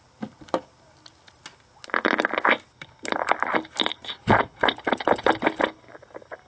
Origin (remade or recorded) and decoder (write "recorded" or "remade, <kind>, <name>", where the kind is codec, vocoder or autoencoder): recorded